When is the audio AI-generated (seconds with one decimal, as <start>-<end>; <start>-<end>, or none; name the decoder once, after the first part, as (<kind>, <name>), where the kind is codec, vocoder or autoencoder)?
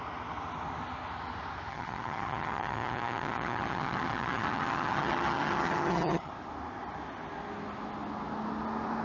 1.7-6.3 (vocoder, HiFi-GAN)